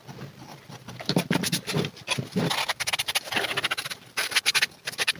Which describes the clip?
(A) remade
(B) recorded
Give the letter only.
B